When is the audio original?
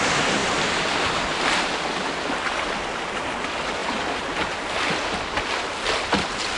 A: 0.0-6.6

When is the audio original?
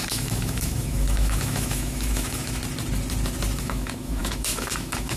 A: 2.6-3.6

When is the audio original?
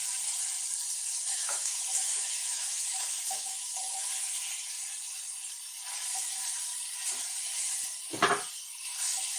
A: 0.0-1.3; 4.1-9.4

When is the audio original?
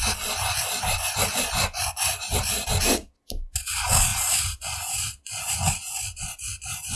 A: 0.0-7.0